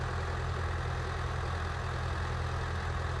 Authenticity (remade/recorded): recorded